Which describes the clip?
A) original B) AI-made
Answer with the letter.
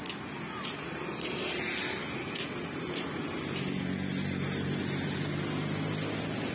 A